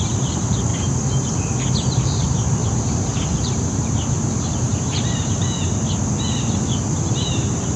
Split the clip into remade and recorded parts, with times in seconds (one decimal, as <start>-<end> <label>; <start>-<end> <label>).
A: 0.0-0.7 remade; 0.7-1.9 recorded; 1.9-2.6 remade; 2.6-3.3 recorded; 3.3-5.6 remade; 5.6-7.8 recorded